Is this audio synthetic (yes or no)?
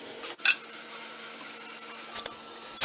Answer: no